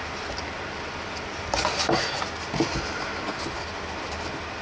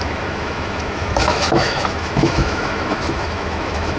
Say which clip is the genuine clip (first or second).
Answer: first